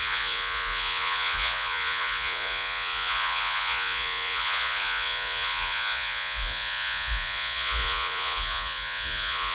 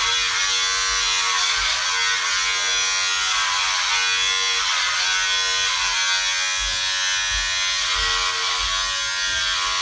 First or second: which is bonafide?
second